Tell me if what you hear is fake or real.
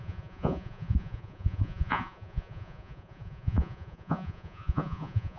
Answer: fake